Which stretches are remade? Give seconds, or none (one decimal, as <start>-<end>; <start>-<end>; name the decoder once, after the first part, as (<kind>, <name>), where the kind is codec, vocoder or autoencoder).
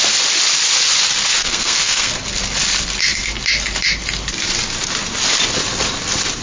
1.4-2.1 (codec, SNAC)